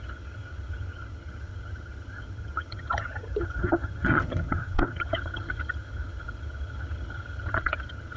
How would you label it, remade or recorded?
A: remade